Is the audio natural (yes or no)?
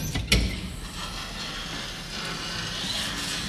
yes